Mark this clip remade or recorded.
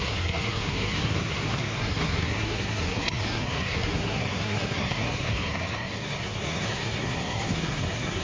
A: remade